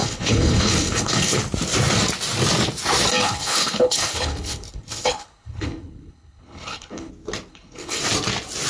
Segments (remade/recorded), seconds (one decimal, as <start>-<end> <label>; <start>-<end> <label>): 0.0-1.4 remade; 1.4-3.2 recorded; 3.2-7.1 remade; 7.1-7.5 recorded; 7.5-8.0 remade; 8.0-8.7 recorded